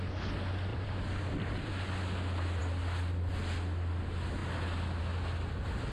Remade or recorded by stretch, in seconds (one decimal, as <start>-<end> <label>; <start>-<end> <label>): 0.0-0.7 recorded; 0.7-1.9 remade; 1.9-5.9 recorded